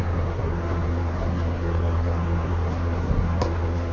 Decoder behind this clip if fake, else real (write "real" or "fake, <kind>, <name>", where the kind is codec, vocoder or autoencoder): fake, codec, SNAC